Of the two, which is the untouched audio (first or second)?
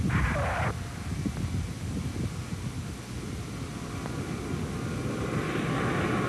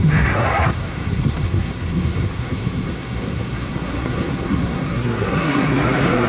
first